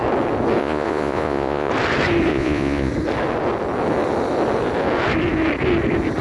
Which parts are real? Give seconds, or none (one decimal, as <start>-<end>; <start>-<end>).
0.0-0.6; 1.7-2.3; 2.9-6.2